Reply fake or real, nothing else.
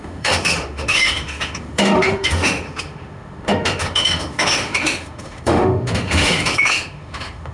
fake